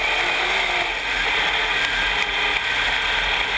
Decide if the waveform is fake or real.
real